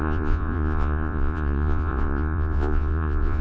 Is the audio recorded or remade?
remade